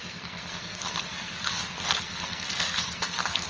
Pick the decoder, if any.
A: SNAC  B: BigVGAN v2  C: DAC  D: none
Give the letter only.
A